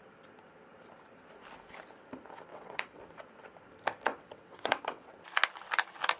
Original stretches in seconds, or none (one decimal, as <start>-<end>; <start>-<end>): 0.0-2.5; 3.0-4.1; 5.1-6.2